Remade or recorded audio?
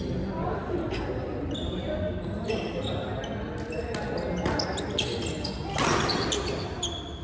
recorded